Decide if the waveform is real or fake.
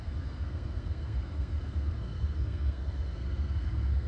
fake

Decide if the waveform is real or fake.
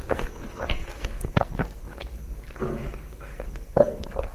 fake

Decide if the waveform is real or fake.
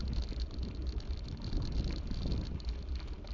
real